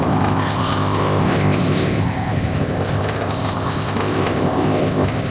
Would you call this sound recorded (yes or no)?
no